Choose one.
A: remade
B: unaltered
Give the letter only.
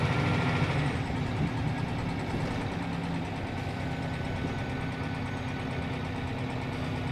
B